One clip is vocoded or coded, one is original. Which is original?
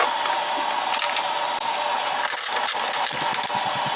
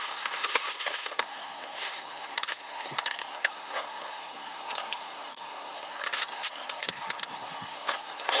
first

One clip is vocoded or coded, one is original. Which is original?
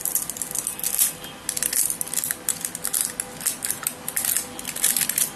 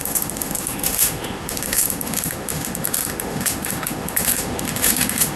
first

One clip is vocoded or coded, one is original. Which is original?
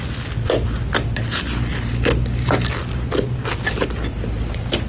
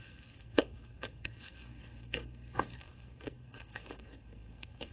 first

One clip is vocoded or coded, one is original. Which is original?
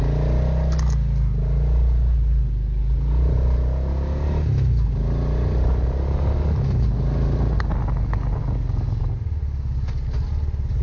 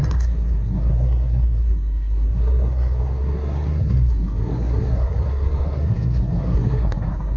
first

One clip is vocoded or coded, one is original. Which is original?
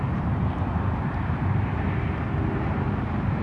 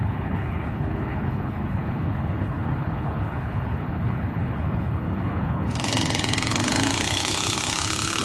first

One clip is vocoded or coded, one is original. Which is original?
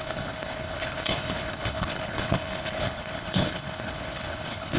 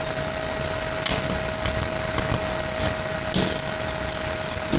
second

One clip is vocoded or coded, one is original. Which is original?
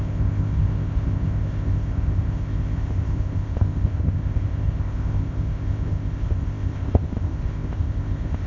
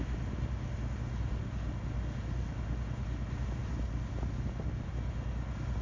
second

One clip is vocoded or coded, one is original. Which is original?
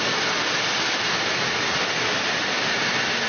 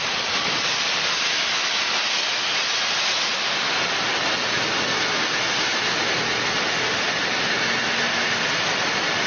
second